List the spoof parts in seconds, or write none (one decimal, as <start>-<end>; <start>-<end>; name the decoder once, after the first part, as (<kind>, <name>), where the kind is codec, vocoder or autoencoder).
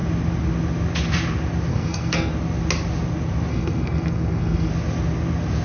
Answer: 1.7-2.3 (codec, SNAC); 3.5-4.7